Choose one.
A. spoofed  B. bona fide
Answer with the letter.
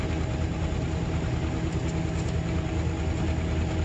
B